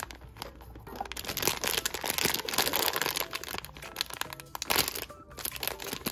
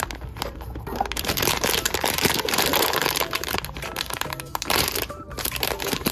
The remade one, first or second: second